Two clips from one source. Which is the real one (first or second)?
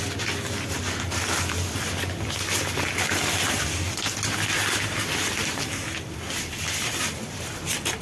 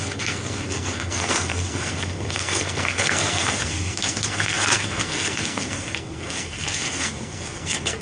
first